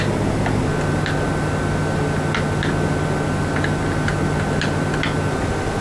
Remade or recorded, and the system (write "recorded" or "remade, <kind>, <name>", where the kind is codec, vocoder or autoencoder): recorded